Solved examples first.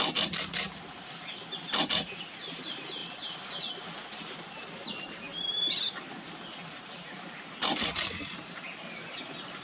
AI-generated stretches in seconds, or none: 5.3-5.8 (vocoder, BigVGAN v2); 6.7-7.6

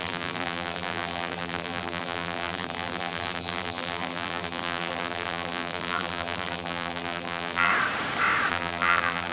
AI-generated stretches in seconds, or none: 0.0-7.7 (vocoder, BigVGAN v2); 8.5-9.3